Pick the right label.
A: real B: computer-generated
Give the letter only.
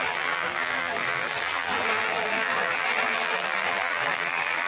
B